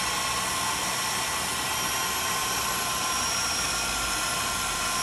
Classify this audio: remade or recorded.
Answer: recorded